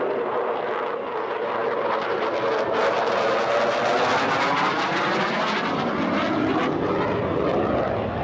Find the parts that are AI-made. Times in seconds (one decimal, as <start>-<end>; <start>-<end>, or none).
none